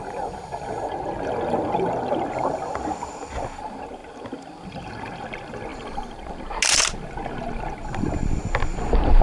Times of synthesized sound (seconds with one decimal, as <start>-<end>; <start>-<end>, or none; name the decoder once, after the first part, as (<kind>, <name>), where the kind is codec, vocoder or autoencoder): none